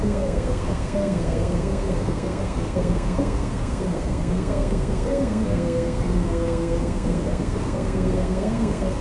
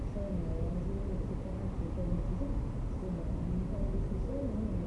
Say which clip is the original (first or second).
second